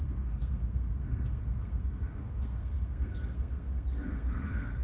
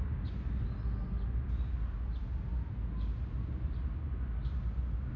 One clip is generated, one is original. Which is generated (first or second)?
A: first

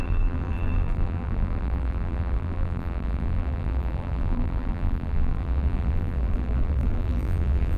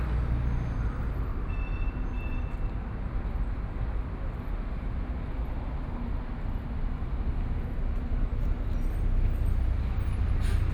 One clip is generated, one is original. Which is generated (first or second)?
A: first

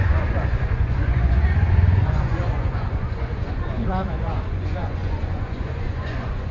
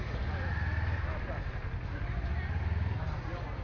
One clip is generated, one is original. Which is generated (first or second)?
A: first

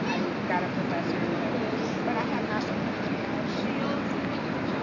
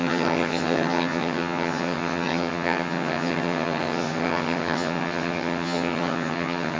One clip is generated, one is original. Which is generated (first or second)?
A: second